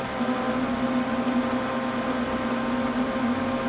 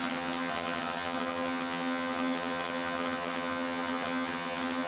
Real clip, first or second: first